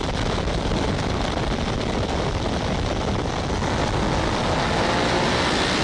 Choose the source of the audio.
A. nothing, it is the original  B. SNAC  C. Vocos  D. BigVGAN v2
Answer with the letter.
A